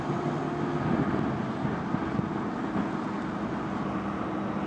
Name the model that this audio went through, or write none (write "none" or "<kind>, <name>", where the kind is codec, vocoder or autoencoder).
none